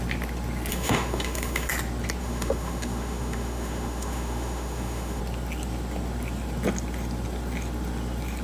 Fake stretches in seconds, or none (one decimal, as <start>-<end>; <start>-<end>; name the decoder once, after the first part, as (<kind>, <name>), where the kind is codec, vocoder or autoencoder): 0.7-1.7 (autoencoder, DAC-VAE); 2.2-5.2